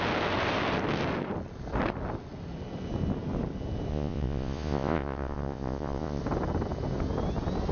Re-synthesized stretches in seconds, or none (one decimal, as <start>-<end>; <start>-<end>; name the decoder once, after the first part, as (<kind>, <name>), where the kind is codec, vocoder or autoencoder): 3.9-6.2 (vocoder, Vocos)